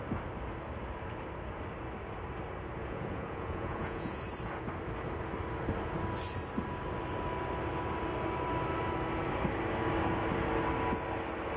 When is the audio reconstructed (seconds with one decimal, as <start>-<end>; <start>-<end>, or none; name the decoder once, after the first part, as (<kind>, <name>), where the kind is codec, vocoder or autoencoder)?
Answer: 2.8-4.2 (vocoder, Vocos)